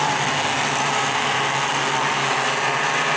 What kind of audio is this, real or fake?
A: real